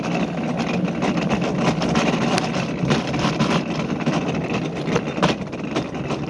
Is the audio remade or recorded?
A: remade